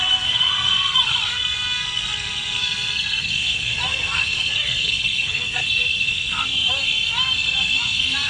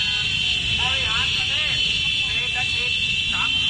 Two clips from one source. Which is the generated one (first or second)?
first